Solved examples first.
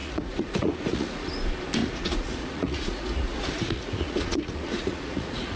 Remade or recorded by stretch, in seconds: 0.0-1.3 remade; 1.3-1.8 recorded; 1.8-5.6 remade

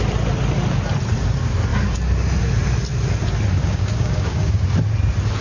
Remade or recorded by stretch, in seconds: 0.0-3.6 recorded; 3.6-4.6 remade; 4.6-5.4 recorded